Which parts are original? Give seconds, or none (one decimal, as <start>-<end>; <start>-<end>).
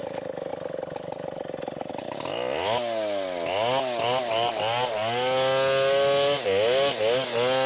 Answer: 0.0-7.7